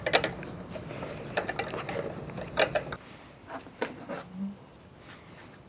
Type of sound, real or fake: real